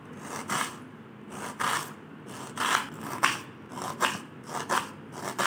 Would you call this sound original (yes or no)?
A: yes